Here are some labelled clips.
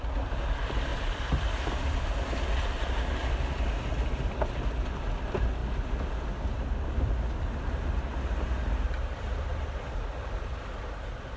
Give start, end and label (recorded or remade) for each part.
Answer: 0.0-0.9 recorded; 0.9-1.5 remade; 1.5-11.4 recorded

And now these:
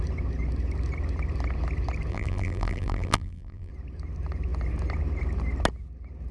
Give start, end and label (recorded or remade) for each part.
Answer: 0.0-2.1 recorded; 2.1-3.7 remade; 3.7-6.3 recorded